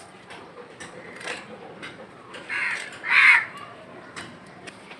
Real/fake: fake